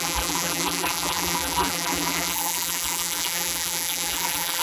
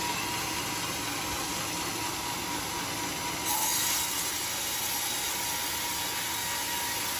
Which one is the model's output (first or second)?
first